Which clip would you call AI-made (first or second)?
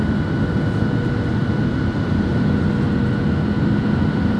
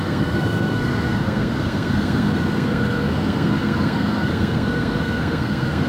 second